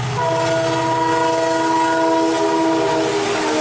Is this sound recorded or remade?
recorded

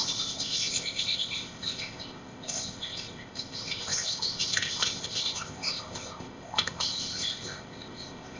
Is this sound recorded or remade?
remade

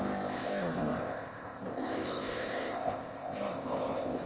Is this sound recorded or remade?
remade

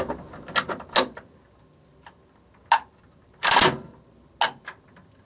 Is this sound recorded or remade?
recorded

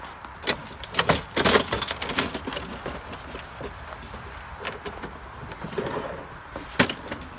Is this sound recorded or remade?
recorded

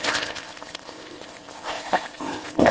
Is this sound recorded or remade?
remade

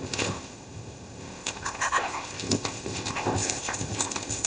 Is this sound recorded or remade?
remade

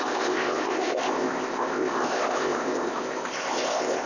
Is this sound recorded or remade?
remade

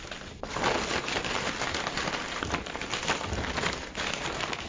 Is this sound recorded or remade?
recorded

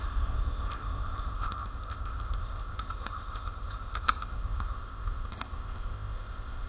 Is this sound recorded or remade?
remade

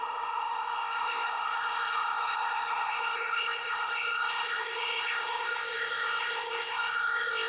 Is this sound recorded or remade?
remade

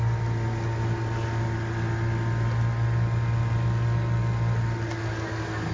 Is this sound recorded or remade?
recorded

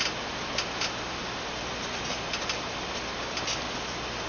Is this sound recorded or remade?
recorded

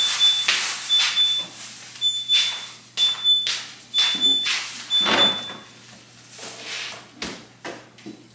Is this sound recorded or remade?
recorded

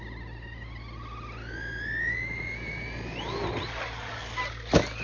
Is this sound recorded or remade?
recorded